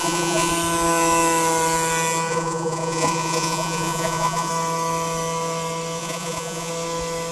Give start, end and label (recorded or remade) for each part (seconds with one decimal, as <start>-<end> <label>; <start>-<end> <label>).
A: 0.0-0.5 remade; 0.5-2.3 recorded; 2.3-4.5 remade; 4.5-6.0 recorded; 6.0-6.7 remade; 6.7-7.3 recorded